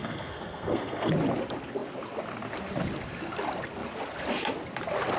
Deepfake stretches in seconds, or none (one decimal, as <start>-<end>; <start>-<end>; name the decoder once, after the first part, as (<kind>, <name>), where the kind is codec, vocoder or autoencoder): 0.0-1.1 (codec, SNAC)